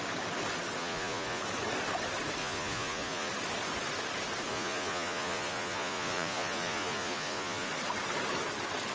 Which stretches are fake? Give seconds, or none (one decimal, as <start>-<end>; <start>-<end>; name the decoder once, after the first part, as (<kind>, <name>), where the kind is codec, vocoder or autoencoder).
0.8-1.4 (vocoder, Vocos); 2.4-3.3; 4.5-7.7